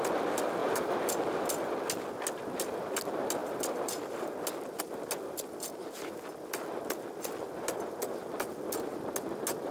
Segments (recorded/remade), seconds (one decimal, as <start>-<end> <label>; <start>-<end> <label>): 0.0-9.7 recorded